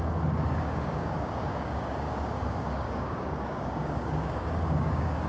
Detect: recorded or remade remade